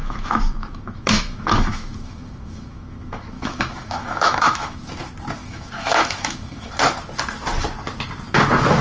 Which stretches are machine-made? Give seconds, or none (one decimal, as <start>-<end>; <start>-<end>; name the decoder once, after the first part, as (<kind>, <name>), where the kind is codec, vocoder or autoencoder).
0.0-4.8 (autoencoder, DAC-VAE); 5.4-6.7